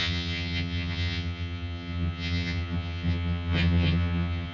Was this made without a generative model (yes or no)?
no